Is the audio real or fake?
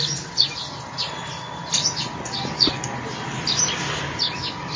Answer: real